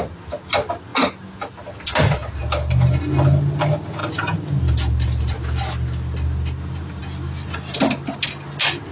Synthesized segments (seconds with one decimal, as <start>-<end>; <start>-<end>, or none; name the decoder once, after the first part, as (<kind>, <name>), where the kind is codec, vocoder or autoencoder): none